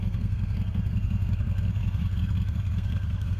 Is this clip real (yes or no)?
no